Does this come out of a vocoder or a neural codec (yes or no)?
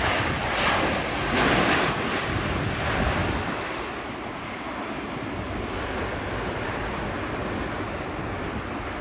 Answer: no